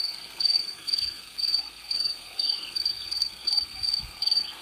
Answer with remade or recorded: remade